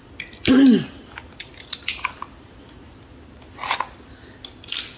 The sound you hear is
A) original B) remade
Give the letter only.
A